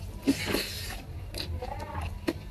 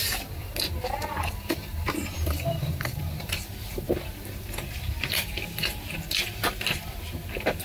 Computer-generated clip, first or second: second